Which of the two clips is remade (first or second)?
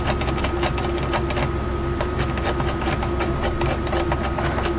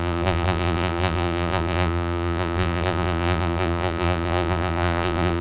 second